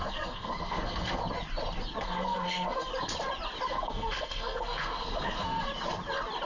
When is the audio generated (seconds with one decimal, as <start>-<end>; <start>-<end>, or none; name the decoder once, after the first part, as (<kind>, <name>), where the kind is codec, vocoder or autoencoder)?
0.0-1.2 (codec, SNAC); 2.0-2.9; 3.7-5.7